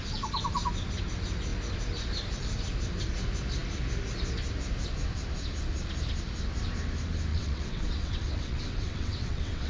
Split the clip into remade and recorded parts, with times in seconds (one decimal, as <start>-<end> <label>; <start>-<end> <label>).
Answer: 0.0-7.3 recorded; 7.3-9.7 remade